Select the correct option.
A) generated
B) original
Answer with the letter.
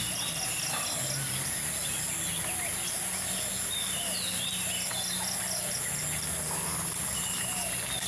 B